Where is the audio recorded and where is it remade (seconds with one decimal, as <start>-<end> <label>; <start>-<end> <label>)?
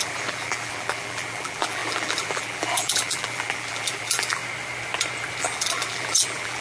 0.0-4.4 remade; 4.4-5.4 recorded; 5.4-6.6 remade